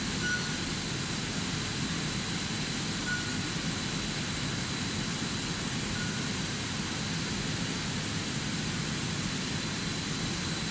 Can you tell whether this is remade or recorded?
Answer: recorded